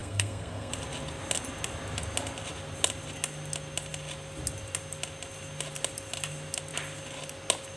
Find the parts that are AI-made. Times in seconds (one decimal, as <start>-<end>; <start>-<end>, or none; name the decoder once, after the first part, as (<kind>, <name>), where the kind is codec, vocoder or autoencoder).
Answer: 0.0-0.7 (codec, SNAC)